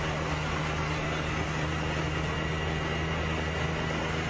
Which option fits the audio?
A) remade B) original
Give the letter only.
B